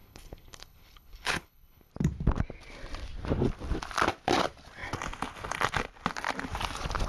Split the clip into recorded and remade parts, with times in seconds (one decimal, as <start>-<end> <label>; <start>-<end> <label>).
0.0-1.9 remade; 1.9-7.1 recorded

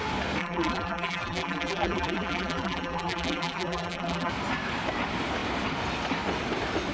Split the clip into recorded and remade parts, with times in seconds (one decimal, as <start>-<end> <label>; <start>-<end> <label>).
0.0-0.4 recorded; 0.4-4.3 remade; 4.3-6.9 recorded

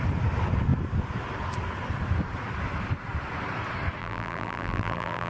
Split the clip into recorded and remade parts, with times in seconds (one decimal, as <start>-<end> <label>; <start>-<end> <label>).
0.0-4.0 recorded; 4.0-5.3 remade

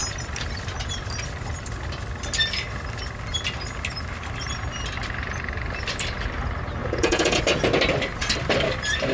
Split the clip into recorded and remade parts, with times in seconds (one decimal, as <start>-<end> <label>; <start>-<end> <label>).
0.0-6.8 recorded; 6.8-7.4 remade; 7.4-9.1 recorded

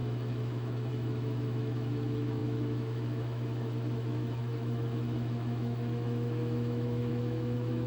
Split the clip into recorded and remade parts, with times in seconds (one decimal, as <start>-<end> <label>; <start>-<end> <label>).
0.0-7.9 remade